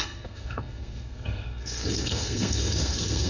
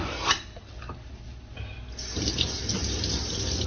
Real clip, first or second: second